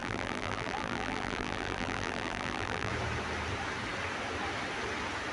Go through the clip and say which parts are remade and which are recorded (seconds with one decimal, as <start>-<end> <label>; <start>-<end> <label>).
0.0-2.9 remade; 2.9-5.3 recorded